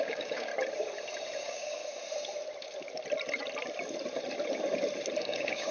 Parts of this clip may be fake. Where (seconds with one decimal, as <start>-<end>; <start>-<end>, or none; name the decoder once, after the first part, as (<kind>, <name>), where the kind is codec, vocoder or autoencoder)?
0.0-0.5 (codec, DAC); 1.4-1.8; 5.2-5.7